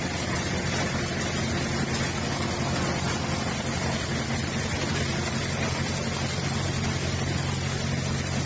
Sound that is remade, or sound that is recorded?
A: recorded